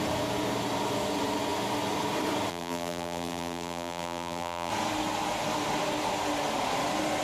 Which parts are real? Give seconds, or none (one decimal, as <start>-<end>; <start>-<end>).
0.0-2.5; 4.7-7.2